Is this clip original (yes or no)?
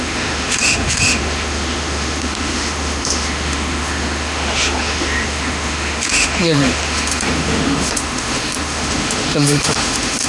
no